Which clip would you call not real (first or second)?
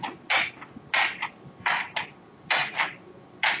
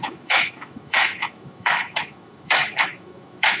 second